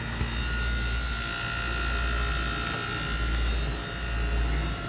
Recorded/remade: recorded